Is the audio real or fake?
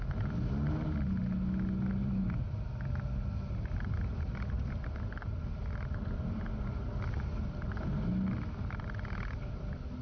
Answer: real